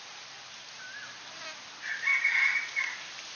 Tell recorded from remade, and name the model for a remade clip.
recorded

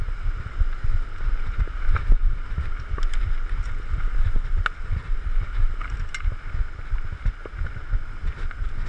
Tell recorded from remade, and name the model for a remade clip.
recorded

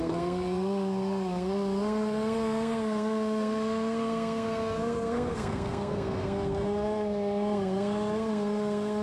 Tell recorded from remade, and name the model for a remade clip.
remade, codec, SNAC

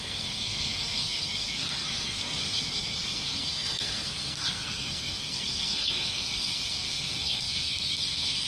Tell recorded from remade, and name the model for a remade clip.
remade, codec, SNAC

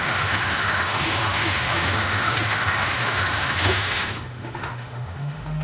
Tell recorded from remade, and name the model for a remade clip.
remade, autoencoder, DAC-VAE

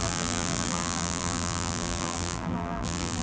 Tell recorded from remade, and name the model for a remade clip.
remade, vocoder, BigVGAN v2